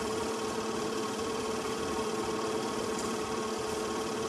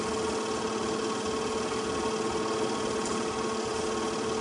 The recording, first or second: second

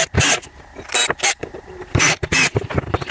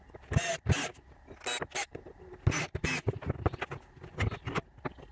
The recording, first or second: second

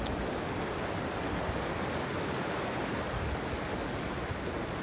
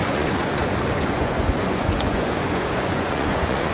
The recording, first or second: first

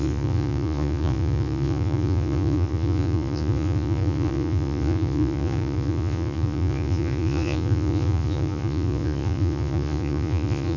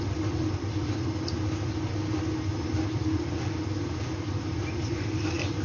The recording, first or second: second